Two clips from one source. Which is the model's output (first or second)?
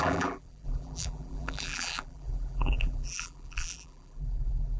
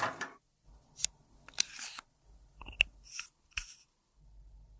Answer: first